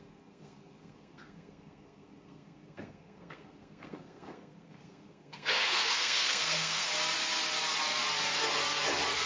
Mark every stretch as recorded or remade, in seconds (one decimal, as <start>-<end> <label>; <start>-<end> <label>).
0.0-6.9 remade; 6.9-9.3 recorded